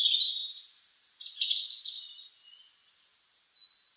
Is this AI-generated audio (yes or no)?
no